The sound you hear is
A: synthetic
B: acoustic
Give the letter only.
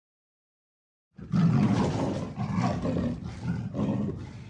B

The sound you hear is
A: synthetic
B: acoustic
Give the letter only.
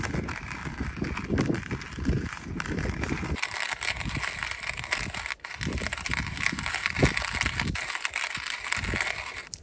B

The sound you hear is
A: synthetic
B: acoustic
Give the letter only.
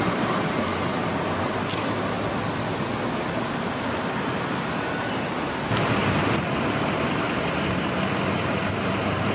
B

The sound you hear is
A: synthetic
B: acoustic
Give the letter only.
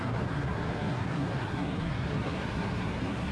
A